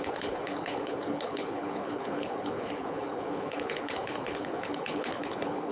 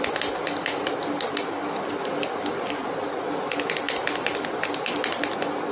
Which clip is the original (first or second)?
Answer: second